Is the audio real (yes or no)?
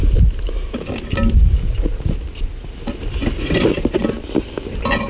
yes